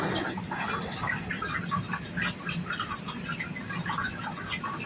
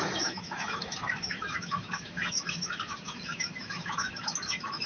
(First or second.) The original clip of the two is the first